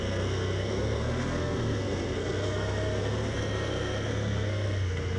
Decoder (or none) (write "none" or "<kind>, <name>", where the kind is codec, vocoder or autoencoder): codec, SNAC